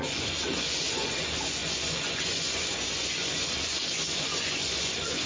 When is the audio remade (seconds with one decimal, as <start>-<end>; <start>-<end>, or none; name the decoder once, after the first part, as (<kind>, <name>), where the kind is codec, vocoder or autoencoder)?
0.0-5.3 (vocoder, Vocos)